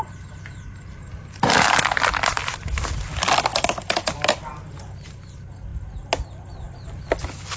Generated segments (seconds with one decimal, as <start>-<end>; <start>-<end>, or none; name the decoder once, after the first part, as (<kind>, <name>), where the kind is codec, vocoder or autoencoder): none